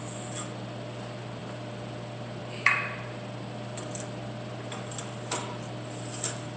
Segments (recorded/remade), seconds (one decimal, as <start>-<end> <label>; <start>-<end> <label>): 0.0-6.6 recorded

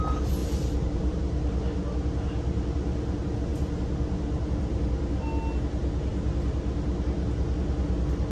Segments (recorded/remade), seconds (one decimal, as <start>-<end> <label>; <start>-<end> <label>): 0.0-0.4 recorded; 0.4-1.2 remade; 1.2-8.3 recorded